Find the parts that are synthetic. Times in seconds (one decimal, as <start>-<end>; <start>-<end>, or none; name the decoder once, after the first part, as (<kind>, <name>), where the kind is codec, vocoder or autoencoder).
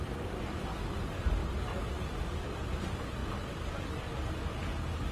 none